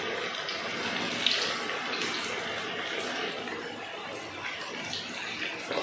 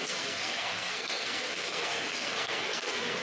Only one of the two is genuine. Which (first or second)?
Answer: first